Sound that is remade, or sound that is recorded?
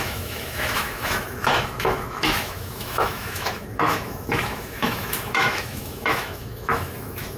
remade